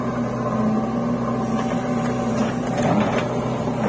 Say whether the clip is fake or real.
real